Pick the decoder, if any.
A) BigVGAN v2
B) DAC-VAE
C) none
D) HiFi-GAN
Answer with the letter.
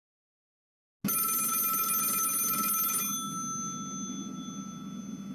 C